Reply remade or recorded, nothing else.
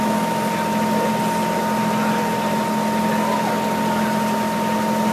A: recorded